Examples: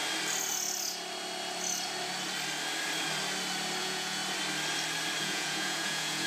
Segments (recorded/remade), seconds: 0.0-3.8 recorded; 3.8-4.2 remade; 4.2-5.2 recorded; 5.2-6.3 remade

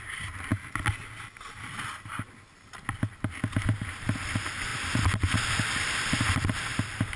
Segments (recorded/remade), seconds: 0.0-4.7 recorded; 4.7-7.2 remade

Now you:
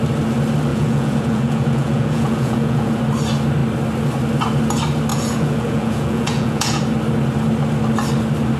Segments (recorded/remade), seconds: 0.0-0.7 recorded; 0.7-3.0 remade; 3.0-5.1 recorded; 5.1-6.8 remade; 6.8-8.6 recorded

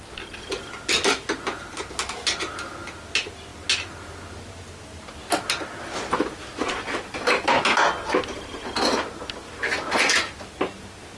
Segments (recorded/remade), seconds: 0.0-11.2 recorded

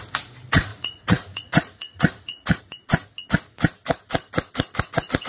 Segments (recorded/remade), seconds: 0.0-0.7 recorded; 0.7-2.6 remade; 2.6-5.3 recorded

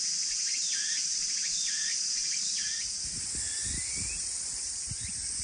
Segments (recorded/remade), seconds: 0.0-5.4 recorded

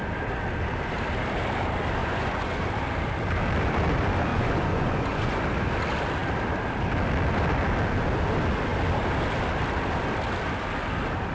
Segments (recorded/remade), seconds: 0.0-2.0 recorded; 2.0-2.6 remade; 2.6-4.3 recorded; 4.3-5.3 remade; 5.3-11.3 recorded

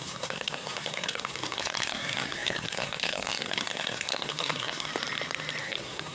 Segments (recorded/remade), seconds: 0.0-4.9 remade; 4.9-5.6 recorded; 5.6-6.1 remade